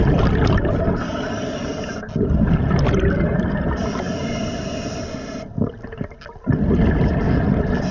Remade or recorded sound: recorded